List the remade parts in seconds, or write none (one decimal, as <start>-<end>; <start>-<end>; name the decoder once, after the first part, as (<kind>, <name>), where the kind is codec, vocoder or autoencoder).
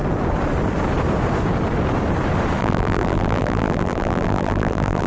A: 2.6-5.1 (vocoder, BigVGAN v2)